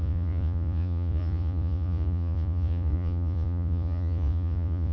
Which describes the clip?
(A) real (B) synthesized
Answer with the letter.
B